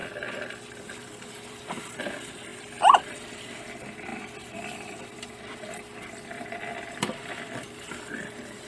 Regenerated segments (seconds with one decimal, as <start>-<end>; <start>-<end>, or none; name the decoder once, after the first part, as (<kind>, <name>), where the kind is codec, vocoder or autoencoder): 0.0-2.1 (vocoder, BigVGAN v2); 4.1-7.9